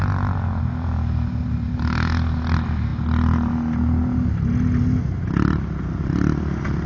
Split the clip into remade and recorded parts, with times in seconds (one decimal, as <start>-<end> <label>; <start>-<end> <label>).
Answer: 0.0-6.9 recorded